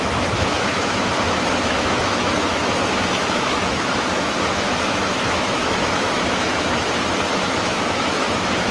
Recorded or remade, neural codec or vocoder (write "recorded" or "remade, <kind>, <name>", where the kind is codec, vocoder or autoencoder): remade, autoencoder, DAC-VAE